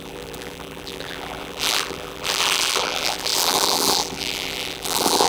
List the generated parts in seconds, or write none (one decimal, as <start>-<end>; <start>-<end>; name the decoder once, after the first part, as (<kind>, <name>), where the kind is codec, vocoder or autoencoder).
0.0-5.3 (vocoder, BigVGAN v2)